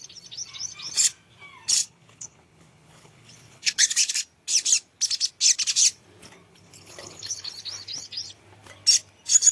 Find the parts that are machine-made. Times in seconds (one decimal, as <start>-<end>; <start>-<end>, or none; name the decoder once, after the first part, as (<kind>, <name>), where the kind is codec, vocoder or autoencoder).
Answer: 1.8-4.2 (codec, HILCodec); 6.5-7.5